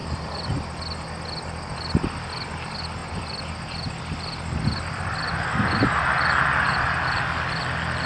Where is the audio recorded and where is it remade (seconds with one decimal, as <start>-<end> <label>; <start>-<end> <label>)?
0.0-8.1 recorded